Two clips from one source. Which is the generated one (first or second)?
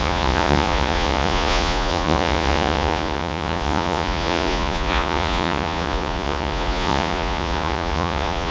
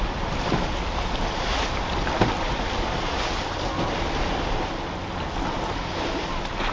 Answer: first